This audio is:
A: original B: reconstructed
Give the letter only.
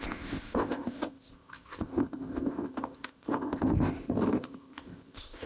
B